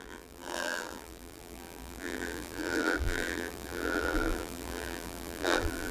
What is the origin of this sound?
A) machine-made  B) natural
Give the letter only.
A